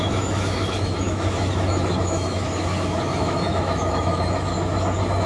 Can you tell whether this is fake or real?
fake